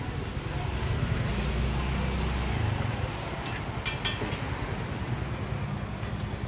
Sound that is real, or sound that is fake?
real